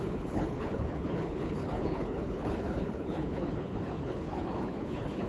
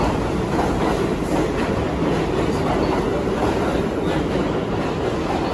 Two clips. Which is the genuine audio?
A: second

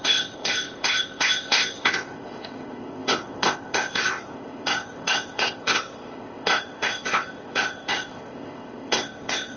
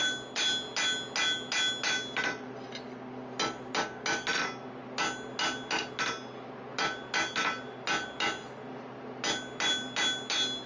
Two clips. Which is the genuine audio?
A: second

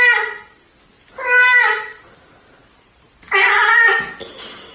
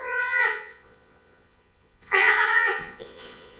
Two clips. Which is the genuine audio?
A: first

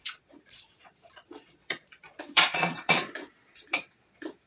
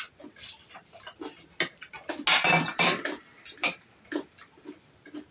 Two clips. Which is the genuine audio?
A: second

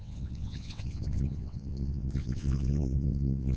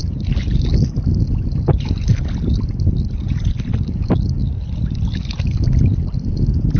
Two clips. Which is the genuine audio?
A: second